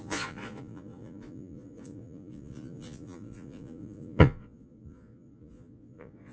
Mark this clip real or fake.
fake